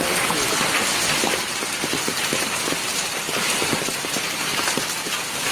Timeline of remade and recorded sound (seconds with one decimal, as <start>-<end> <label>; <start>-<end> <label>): 0.0-5.5 recorded